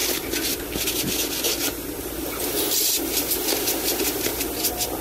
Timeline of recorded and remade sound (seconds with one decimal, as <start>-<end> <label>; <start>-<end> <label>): 0.0-5.0 recorded